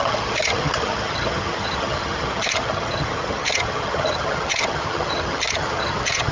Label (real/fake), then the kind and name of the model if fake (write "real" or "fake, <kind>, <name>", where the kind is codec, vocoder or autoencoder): fake, vocoder, HiFi-GAN